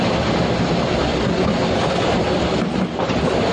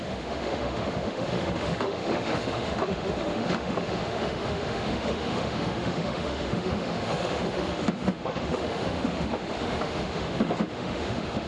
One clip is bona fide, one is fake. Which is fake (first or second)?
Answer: second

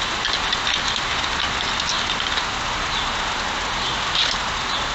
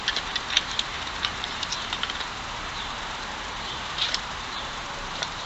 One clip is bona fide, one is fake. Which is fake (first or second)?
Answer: second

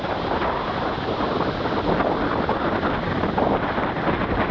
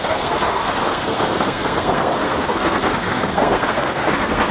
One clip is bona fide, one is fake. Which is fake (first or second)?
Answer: second